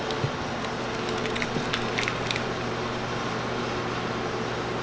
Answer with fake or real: real